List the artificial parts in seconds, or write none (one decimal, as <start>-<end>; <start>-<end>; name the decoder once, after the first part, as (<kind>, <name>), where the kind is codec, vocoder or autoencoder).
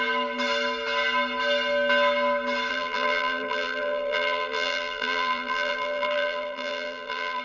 2.7-7.4 (vocoder, BigVGAN v2)